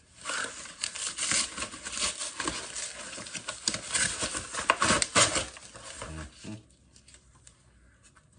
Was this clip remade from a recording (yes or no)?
no